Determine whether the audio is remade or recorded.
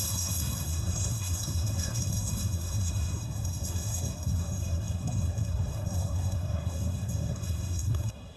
remade